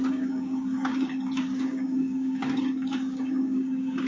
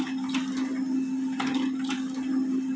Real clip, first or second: second